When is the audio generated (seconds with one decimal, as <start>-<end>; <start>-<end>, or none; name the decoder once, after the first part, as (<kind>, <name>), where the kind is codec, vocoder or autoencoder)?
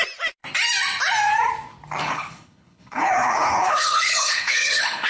2.0-5.1 (codec, HILCodec)